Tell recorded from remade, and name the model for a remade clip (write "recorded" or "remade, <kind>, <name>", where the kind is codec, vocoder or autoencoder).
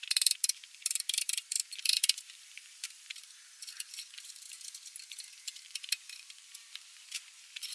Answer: remade, vocoder, BigVGAN v2